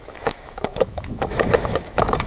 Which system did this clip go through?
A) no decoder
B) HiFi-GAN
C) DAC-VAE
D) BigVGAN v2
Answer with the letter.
C